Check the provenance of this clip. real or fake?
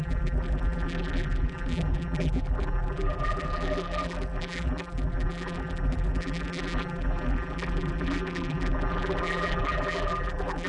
fake